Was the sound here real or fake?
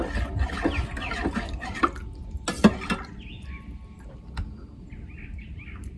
real